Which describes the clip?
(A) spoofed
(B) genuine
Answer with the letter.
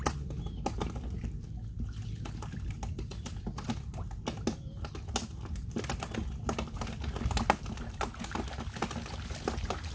B